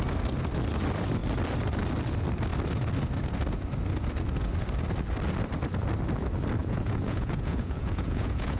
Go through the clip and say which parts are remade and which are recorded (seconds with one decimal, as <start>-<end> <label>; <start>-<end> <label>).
0.0-6.6 recorded; 6.6-8.6 remade